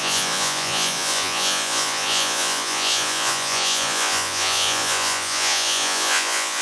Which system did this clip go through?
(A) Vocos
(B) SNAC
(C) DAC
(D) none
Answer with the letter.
A